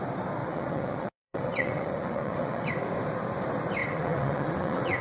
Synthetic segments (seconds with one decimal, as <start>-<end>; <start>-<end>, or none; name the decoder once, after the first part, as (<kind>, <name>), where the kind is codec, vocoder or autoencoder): 0.4-2.7 (vocoder, WaveNeXt); 3.8-5.0